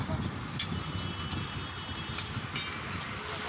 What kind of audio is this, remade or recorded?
recorded